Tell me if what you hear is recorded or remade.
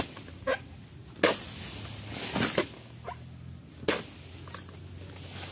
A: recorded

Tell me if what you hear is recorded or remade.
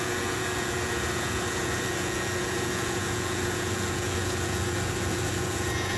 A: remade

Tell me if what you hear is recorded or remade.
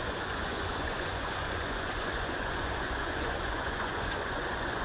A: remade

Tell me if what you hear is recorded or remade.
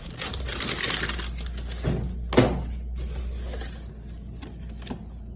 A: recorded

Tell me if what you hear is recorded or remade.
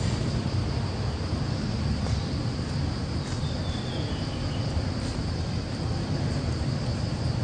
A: recorded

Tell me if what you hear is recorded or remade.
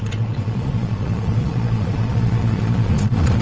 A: remade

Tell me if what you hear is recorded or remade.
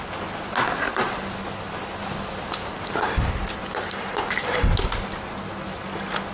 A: recorded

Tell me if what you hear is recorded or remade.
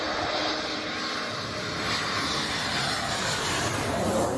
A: recorded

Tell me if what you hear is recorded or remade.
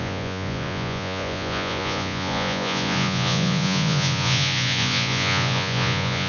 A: remade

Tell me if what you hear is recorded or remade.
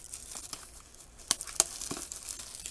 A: recorded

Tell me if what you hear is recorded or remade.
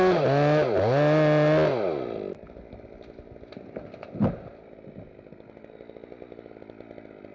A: recorded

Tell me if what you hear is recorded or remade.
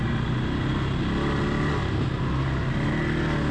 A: recorded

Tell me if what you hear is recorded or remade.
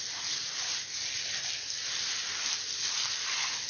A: recorded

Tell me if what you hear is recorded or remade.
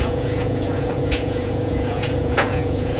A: remade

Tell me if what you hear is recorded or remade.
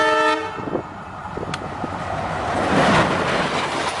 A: recorded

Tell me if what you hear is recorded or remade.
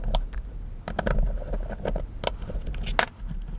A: recorded